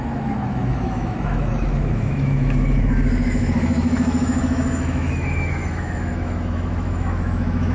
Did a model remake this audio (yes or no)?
yes